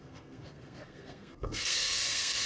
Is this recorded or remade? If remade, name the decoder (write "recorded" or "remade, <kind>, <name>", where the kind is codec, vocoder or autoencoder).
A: remade, codec, SNAC